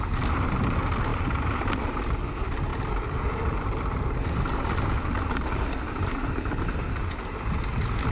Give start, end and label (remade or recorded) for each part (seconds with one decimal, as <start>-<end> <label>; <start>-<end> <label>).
0.0-8.1 recorded